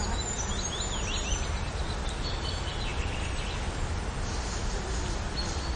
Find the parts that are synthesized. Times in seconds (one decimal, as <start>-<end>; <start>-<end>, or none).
none